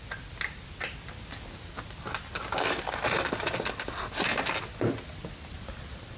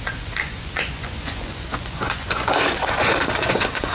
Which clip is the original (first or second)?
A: first